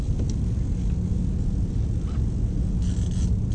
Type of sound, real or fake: real